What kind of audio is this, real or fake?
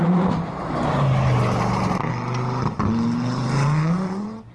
real